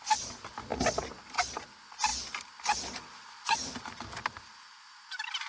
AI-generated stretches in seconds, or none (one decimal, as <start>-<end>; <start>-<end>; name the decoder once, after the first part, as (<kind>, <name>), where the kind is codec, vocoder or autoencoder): none